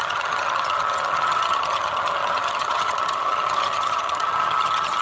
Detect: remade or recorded remade